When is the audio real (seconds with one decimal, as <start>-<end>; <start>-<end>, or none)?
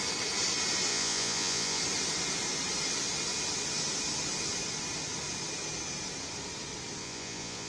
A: 0.0-0.9; 1.8-7.0